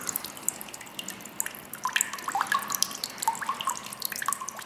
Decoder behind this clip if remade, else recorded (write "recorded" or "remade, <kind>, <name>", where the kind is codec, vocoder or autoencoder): recorded